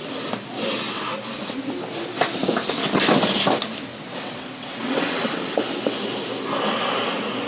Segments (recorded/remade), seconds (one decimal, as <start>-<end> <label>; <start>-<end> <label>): 0.0-3.9 recorded; 3.9-5.6 remade; 5.6-7.5 recorded